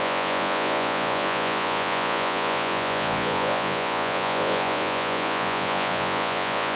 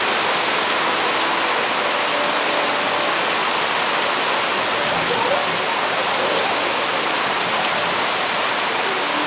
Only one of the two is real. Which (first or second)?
second